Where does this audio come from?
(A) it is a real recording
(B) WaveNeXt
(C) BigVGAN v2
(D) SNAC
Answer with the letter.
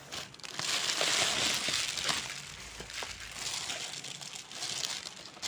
A